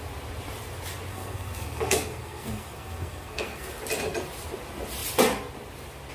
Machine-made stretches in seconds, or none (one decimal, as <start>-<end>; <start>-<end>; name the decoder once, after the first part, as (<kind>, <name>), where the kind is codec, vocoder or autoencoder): 1.1-3.7 (codec, SNAC)